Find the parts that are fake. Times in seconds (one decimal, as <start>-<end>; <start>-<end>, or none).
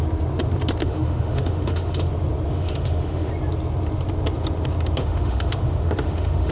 0.8-2.1; 2.5-3.3; 5.0-6.5